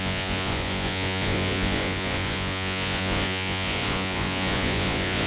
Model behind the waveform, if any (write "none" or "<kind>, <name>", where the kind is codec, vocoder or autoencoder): vocoder, Vocos